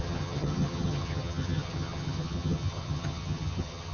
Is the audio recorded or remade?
remade